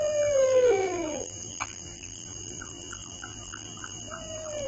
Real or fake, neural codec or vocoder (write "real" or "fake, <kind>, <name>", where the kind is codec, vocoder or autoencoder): fake, vocoder, BigVGAN v2